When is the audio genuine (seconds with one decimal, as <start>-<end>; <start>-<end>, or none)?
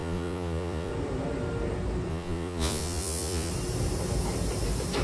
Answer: 0.9-2.1; 3.5-5.0